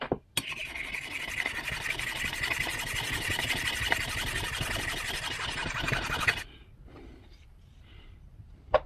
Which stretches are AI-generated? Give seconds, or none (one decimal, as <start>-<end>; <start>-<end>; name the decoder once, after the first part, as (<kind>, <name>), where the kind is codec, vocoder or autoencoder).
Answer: none